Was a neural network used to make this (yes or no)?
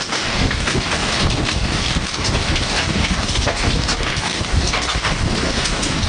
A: yes